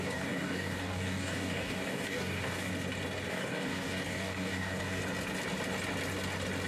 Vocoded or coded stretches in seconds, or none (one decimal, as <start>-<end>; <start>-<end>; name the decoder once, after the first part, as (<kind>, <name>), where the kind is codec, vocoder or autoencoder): 0.0-2.7 (codec, DAC); 3.3-5.0